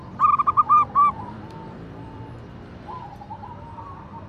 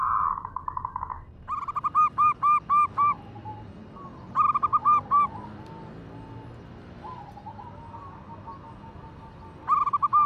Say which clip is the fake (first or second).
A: first